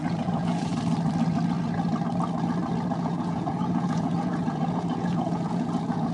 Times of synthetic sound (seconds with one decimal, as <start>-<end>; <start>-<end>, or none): 0.0-0.7; 2.9-6.1